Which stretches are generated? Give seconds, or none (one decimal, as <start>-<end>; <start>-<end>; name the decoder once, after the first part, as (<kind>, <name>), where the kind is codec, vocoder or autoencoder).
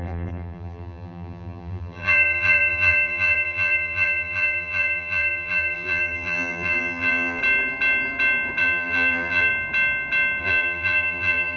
0.0-7.4 (vocoder, BigVGAN v2); 8.6-9.5; 10.4-11.6